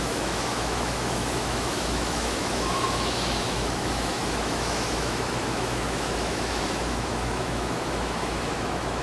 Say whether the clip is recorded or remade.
remade